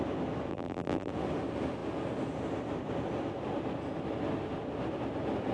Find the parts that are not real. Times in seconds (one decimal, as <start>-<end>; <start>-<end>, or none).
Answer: 0.5-1.1